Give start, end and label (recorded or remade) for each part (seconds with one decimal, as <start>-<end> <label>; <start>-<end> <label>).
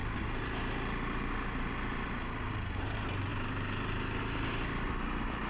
0.0-5.5 recorded